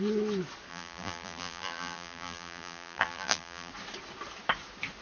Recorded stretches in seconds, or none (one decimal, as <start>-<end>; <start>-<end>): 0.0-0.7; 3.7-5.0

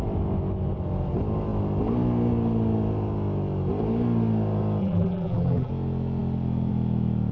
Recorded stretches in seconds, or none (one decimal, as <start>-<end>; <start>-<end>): 0.0-4.8; 5.7-7.3

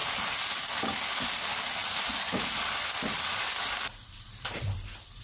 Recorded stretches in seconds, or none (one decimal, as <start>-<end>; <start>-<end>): 0.9-1.8

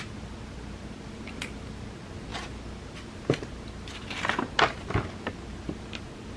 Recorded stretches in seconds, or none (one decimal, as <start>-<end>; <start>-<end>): 0.0-6.4

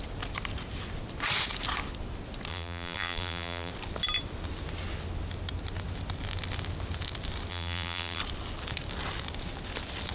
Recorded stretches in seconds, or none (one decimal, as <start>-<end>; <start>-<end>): 0.0-2.5; 3.7-7.5; 8.2-10.1

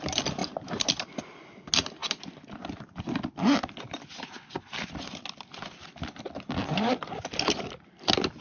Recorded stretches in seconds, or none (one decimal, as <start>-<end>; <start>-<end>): 0.0-0.4; 0.9-8.4